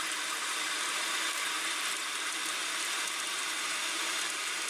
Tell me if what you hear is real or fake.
fake